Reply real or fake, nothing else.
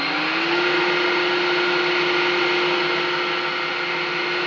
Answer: real